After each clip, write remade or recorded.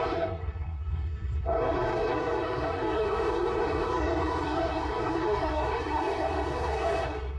remade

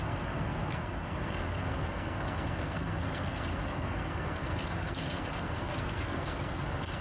remade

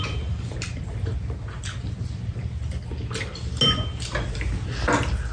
recorded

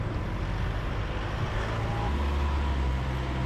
recorded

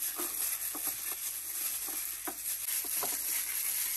recorded